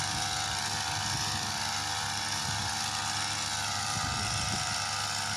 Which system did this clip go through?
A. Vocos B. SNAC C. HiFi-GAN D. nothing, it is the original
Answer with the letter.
D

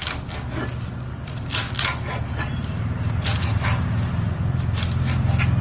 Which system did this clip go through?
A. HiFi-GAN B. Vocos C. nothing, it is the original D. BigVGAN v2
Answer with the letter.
C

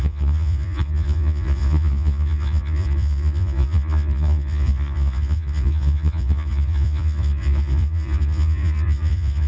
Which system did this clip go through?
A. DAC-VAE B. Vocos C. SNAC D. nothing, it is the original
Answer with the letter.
B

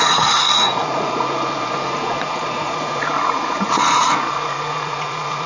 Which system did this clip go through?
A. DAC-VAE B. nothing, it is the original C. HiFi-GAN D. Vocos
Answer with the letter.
D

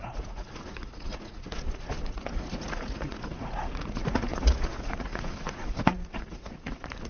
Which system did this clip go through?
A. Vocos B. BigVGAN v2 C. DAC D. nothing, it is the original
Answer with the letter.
A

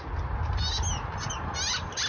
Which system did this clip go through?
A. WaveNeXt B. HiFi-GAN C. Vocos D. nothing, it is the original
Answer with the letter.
D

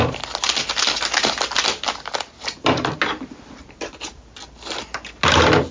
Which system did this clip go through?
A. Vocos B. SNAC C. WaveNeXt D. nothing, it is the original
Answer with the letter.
D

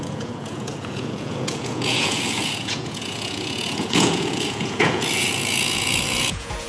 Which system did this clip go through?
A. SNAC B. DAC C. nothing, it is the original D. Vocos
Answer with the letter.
D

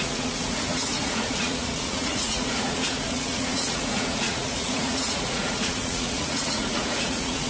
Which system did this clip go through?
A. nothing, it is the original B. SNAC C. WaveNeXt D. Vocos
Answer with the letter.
D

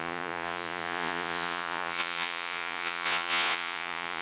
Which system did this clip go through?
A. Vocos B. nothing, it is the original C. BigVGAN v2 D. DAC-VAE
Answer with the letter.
A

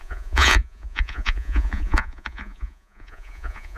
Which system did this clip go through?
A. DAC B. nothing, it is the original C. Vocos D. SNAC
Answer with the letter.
C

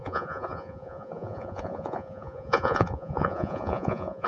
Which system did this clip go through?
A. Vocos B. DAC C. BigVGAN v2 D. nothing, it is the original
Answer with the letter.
A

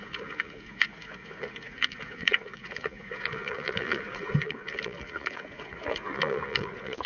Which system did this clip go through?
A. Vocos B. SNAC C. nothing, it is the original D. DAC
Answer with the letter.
A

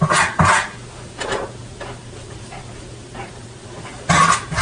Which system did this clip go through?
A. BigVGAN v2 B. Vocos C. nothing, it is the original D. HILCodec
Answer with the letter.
C